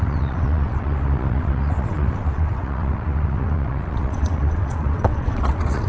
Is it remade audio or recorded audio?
remade